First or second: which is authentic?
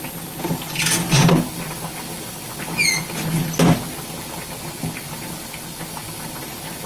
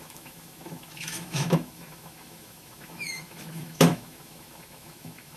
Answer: first